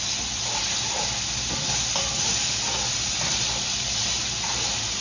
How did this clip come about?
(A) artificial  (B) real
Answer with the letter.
B